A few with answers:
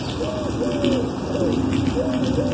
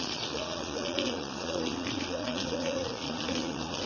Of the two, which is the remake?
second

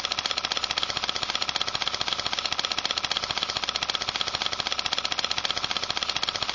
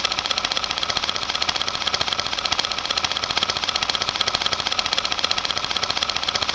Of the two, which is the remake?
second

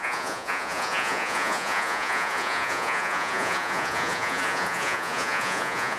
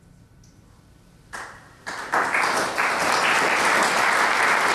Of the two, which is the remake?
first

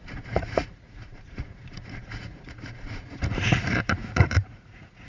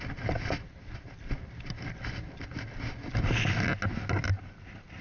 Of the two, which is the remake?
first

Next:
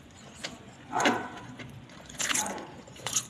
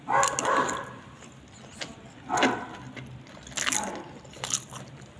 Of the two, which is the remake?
first